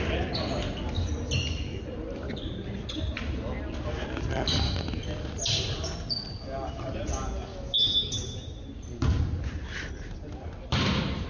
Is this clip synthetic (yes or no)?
no